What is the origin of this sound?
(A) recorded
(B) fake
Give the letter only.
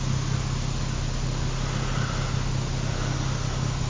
A